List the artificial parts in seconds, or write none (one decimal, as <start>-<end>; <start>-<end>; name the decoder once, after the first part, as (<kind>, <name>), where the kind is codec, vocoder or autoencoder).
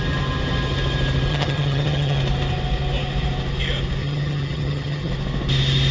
1.3-2.2 (vocoder, HiFi-GAN); 4.0-5.1